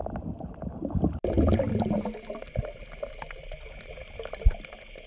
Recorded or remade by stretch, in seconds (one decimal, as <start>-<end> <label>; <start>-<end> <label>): 0.0-5.1 recorded